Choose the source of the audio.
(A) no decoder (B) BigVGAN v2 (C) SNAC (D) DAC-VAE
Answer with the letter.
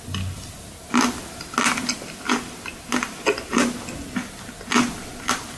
A